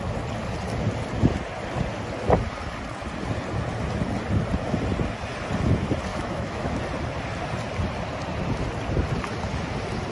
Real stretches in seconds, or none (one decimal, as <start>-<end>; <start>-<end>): 0.0-6.1; 6.8-10.1